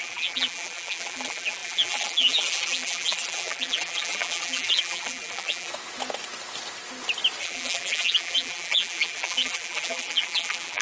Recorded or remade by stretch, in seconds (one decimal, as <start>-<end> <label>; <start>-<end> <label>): 0.0-5.7 remade; 5.7-7.4 recorded; 7.4-10.8 remade